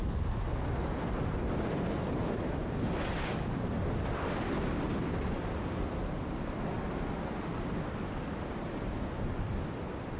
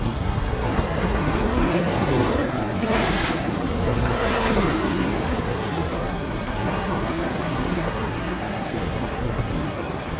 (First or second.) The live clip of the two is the first